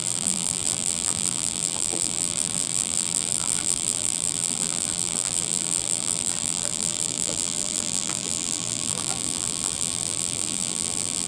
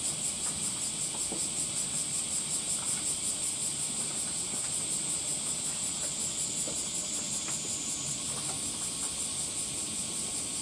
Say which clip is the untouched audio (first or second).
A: second